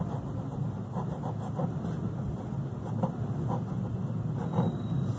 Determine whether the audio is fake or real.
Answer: real